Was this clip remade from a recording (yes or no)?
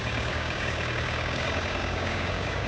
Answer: yes